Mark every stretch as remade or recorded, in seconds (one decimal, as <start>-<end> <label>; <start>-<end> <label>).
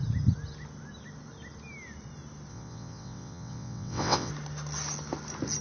0.0-2.5 recorded; 2.5-4.3 remade; 4.3-5.6 recorded